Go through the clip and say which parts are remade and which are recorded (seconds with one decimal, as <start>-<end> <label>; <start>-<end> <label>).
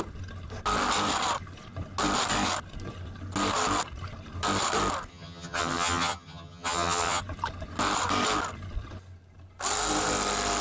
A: 0.0-5.1 recorded; 5.1-7.2 remade; 7.2-10.6 recorded